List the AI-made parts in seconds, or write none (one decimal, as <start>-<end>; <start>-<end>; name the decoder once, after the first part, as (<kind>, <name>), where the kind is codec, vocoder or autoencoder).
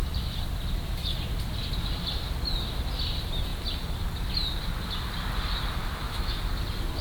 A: 5.8-6.4 (autoencoder, DAC-VAE)